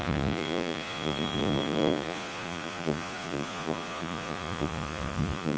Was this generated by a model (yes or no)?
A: yes